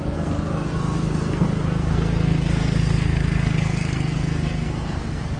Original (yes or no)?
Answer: no